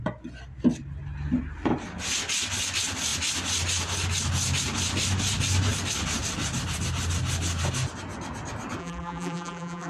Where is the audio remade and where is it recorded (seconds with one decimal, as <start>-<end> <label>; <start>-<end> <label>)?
0.0-8.8 recorded; 8.8-9.9 remade